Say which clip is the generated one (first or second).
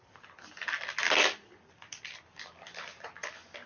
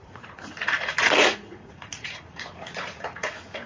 second